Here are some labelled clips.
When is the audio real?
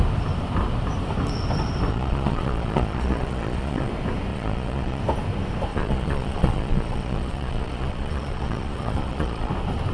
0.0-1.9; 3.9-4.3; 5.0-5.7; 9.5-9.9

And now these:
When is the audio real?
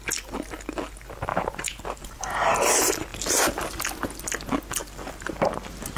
0.0-1.3; 2.0-3.1; 3.8-4.8; 5.5-6.0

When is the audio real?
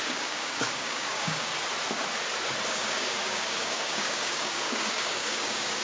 1.5-2.7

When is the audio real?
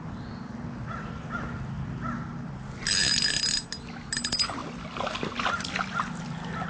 0.0-6.7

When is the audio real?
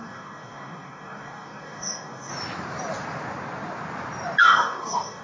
2.3-4.4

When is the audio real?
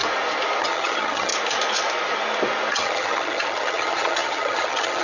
0.0-0.6; 1.3-2.7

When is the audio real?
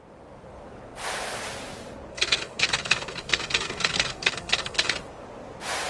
0.0-2.1; 4.9-5.9